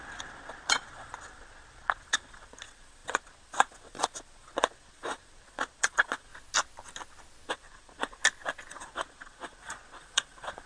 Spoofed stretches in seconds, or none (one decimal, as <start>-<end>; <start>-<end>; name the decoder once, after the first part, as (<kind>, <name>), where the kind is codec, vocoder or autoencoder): 0.0-6.3 (vocoder, Vocos); 7.5-8.2; 8.7-10.7